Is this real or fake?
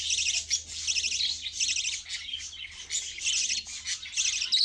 real